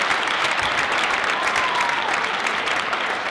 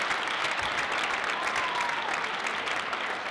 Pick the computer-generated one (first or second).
first